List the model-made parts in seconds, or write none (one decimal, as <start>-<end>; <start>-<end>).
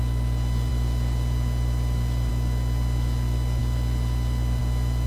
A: none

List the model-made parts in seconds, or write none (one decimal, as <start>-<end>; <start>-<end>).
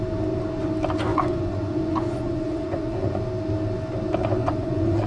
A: 1.1-3.2; 4.4-5.1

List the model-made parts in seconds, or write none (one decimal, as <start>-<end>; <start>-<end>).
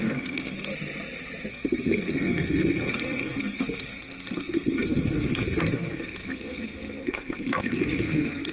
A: 0.0-0.7; 1.5-8.5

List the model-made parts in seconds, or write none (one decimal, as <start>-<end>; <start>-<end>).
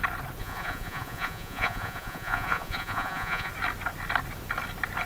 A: 0.4-3.5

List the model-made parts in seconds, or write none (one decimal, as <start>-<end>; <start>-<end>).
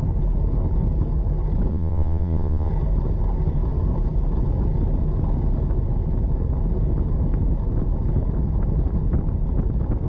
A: 1.7-2.7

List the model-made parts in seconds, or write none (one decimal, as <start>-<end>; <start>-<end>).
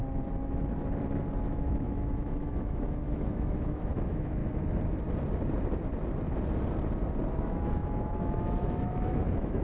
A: 1.4-4.4; 7.3-9.6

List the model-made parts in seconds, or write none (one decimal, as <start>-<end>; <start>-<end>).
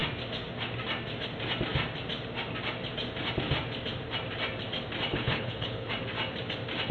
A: 5.1-5.9